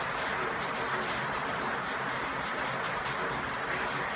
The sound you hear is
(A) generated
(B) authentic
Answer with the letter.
B